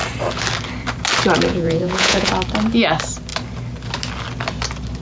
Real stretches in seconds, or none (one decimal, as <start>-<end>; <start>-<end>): 0.0-1.5; 2.3-5.0